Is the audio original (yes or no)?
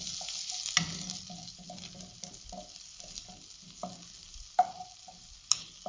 yes